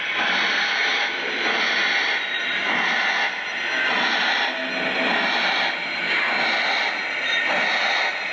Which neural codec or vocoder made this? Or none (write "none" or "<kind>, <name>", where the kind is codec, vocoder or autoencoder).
none